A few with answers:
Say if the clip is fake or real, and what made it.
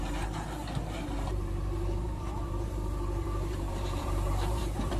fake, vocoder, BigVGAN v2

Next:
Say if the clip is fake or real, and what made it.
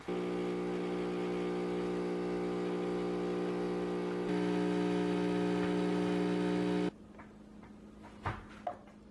real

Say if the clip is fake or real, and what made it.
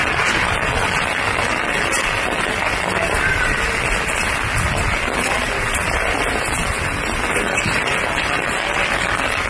real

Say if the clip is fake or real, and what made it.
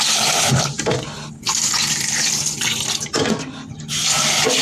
real